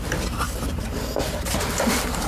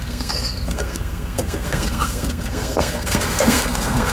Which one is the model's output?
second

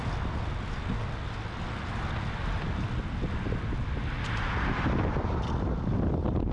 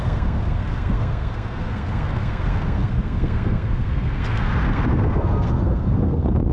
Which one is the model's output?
second